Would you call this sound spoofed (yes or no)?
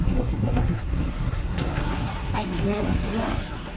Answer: yes